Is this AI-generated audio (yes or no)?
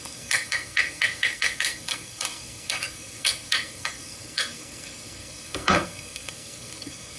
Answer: yes